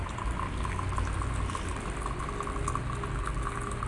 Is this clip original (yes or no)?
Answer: yes